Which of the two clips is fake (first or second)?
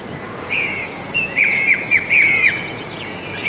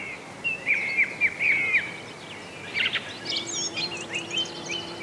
first